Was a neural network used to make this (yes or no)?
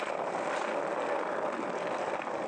no